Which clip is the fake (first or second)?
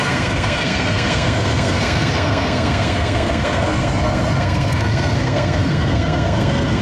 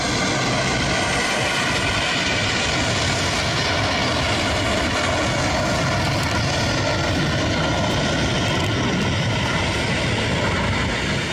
first